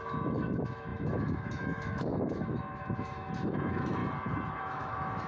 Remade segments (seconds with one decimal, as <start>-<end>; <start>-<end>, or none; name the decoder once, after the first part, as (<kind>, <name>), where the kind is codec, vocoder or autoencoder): 0.0-4.0 (autoencoder, DAC-VAE); 4.6-5.3